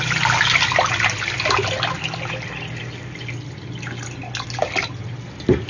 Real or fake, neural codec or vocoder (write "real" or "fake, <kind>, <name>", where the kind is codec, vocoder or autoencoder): real